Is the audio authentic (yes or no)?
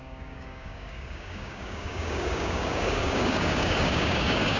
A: no